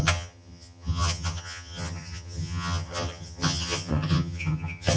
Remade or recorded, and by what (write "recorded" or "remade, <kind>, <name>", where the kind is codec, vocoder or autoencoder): remade, vocoder, HiFi-GAN